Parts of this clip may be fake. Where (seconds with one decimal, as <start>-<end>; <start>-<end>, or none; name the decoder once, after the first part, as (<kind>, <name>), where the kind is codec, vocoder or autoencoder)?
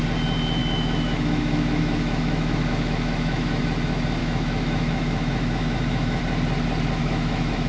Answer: 0.6-3.6 (autoencoder, DAC-VAE); 4.2-6.2; 7.0-7.7